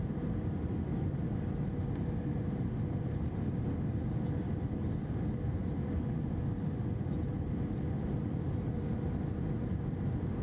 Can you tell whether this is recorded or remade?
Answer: recorded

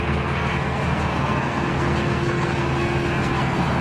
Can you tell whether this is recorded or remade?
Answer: remade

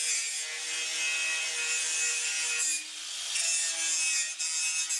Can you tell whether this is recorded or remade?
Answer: recorded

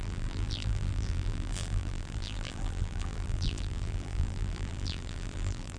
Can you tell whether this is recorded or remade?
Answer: remade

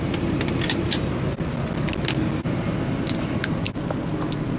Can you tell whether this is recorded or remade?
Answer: recorded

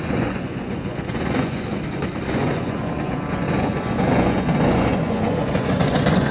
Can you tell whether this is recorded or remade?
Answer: remade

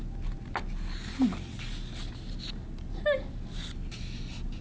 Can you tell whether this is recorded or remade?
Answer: recorded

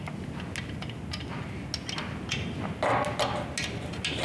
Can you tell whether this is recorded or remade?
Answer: recorded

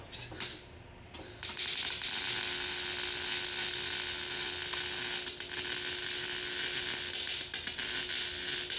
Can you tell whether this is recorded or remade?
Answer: recorded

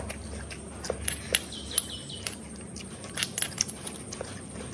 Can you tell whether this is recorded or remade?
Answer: recorded